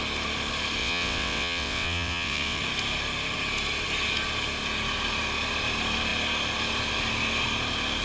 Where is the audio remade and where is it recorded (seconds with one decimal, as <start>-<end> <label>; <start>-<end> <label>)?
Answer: 0.0-0.8 recorded; 0.8-2.6 remade; 2.6-8.0 recorded